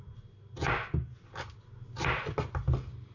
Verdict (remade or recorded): recorded